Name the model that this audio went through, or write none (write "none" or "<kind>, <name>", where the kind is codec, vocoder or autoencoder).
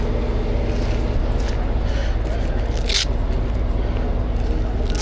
none